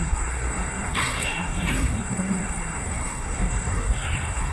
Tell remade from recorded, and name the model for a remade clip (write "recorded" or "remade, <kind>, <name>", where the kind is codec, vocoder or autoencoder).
remade, codec, SNAC